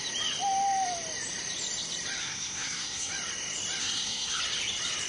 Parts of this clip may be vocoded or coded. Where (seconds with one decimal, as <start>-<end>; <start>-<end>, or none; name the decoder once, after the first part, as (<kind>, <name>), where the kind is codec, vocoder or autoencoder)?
2.2-3.1 (codec, SNAC); 3.8-4.4